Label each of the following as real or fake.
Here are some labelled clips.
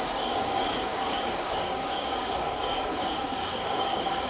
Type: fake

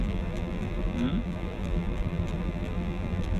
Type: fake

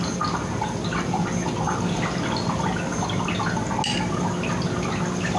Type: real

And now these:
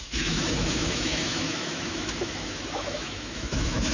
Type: fake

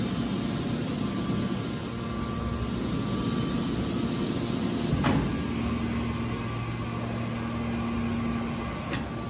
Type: real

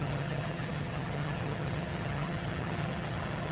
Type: fake